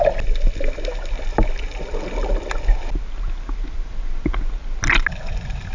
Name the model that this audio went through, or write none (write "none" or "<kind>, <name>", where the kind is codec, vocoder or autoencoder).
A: none